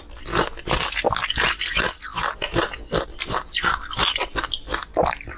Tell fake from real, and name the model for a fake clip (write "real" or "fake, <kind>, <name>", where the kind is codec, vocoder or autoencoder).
real